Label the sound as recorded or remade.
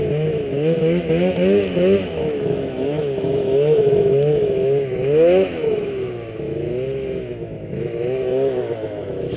remade